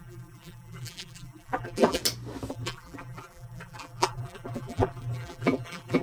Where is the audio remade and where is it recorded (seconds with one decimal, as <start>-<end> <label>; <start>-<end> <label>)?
0.0-2.0 remade; 2.0-2.5 recorded; 2.5-6.0 remade